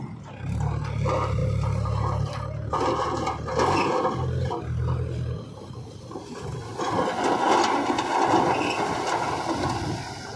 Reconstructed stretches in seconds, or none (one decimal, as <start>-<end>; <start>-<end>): none